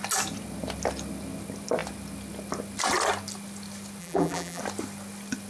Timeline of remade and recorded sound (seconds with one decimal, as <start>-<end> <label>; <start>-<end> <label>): 0.0-4.0 recorded; 4.0-4.6 remade; 4.6-5.5 recorded